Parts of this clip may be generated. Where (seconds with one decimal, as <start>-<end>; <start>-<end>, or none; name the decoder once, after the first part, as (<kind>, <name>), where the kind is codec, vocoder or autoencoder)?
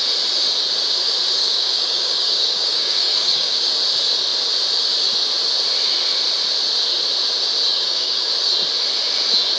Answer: 1.4-3.7 (codec, DAC); 7.7-8.3